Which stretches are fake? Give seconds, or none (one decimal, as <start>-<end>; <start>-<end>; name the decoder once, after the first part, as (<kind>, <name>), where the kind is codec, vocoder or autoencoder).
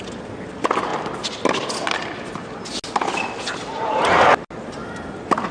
none